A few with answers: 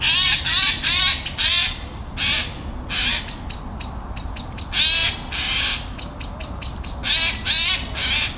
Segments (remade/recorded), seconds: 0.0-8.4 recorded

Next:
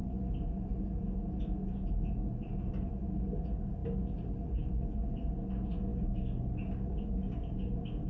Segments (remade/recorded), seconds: 0.0-5.9 recorded; 5.9-8.1 remade

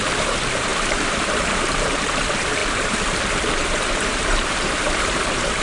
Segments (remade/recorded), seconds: 0.0-5.6 remade

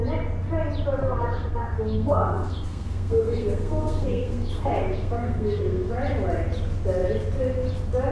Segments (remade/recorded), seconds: 0.0-1.0 recorded; 1.0-5.9 remade; 5.9-8.1 recorded

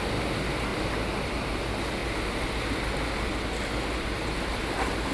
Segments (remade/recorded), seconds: 0.0-5.1 recorded

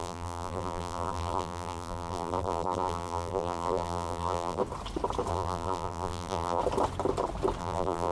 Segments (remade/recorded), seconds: 0.0-4.6 remade; 4.6-5.3 recorded; 5.3-6.6 remade; 6.6-7.6 recorded; 7.6-8.1 remade

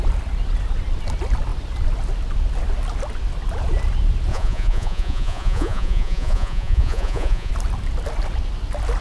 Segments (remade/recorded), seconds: 0.0-4.3 recorded; 4.3-7.5 remade; 7.5-9.0 recorded

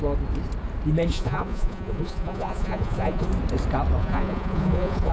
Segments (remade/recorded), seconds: 0.0-1.1 recorded; 1.1-3.3 remade; 3.3-4.0 recorded; 4.0-5.1 remade